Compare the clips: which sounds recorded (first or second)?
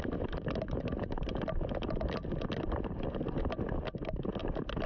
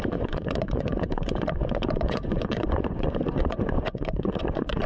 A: first